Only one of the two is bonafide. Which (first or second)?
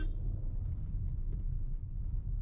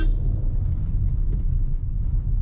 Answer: second